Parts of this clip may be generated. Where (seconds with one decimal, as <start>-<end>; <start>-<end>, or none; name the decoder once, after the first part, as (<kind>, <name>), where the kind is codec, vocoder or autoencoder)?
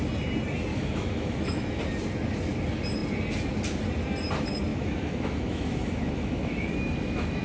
0.7-1.8 (autoencoder, DAC-VAE); 4.7-7.4